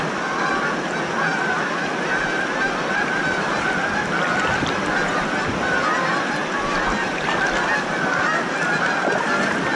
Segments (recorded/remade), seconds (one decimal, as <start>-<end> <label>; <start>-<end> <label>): 0.0-9.8 recorded